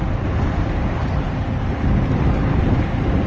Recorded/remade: recorded